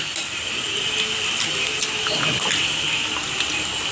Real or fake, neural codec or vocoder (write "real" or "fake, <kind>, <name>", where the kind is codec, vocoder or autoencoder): real